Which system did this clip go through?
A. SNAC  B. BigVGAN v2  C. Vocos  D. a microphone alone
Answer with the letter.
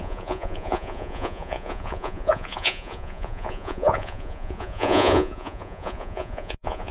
C